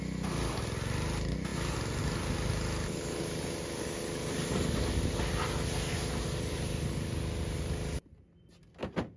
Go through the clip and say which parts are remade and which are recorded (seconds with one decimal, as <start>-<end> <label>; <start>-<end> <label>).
0.0-9.2 recorded